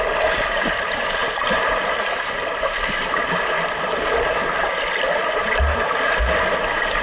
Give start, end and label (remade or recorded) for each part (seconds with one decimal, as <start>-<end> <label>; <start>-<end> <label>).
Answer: 0.0-7.0 recorded